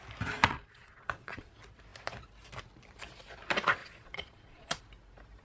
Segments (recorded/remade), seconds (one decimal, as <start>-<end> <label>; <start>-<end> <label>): 0.0-0.4 recorded; 0.4-1.5 remade; 1.5-3.8 recorded; 3.8-4.8 remade; 4.8-5.4 recorded